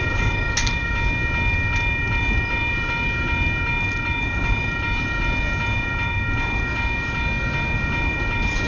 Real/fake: real